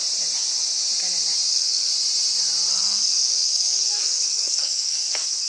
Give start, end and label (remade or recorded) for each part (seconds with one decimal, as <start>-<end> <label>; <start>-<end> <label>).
0.0-1.5 recorded; 1.5-1.9 remade; 1.9-2.7 recorded; 2.7-5.5 remade